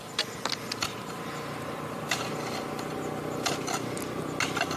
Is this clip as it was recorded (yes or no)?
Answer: yes